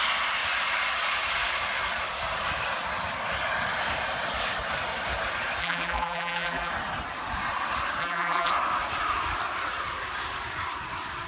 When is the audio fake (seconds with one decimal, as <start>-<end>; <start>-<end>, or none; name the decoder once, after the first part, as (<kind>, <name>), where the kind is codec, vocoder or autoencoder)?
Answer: 5.6-6.7 (vocoder, BigVGAN v2); 8.0-8.5